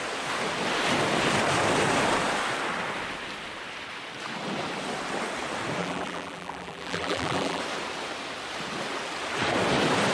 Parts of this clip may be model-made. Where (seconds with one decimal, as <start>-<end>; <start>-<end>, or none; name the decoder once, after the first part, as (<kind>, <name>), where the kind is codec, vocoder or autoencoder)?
5.8-7.6 (vocoder, BigVGAN v2)